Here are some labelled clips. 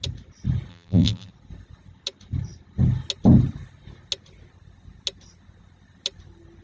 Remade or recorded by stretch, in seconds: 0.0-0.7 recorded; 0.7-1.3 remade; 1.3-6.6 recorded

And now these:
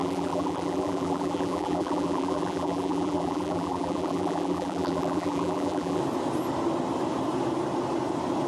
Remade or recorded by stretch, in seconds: 0.0-6.0 remade; 6.0-8.5 recorded